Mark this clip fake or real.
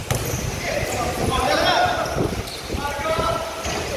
real